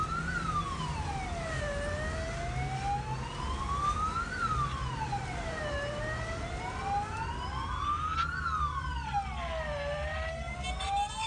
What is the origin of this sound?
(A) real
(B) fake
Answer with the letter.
A